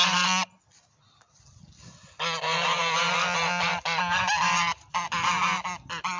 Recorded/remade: recorded